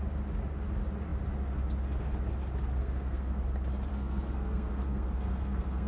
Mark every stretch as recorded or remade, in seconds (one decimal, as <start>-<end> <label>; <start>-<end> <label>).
0.0-2.8 recorded; 2.8-3.4 remade; 3.4-3.9 recorded; 3.9-5.9 remade